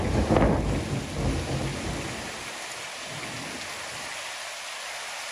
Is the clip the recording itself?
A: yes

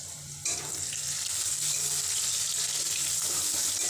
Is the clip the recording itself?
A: no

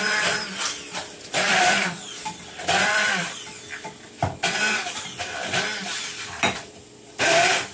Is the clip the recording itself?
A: no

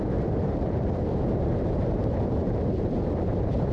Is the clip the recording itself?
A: no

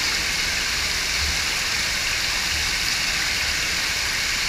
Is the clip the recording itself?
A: yes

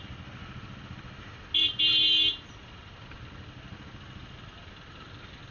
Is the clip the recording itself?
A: yes